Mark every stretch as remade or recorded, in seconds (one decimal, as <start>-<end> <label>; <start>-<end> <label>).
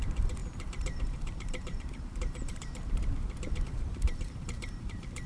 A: 0.0-5.3 remade